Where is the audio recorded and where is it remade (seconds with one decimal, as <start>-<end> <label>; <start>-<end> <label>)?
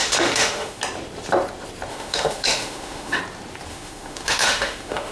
0.0-0.8 remade; 0.8-1.9 recorded; 1.9-3.2 remade; 3.2-3.7 recorded; 3.7-5.1 remade